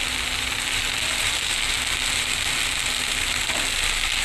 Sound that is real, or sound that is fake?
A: real